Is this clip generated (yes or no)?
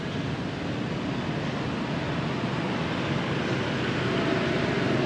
no